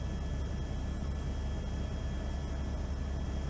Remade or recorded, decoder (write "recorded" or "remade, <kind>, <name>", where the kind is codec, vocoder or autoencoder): recorded